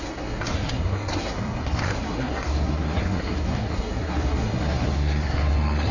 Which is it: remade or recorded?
remade